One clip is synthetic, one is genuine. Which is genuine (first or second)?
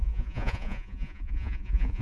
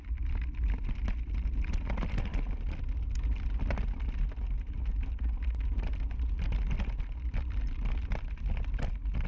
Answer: second